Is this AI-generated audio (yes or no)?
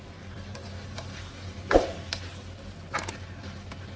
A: no